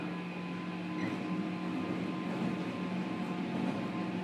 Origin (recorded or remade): recorded